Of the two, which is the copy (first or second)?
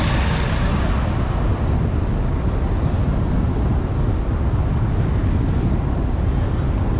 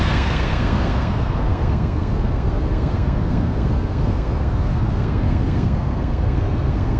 second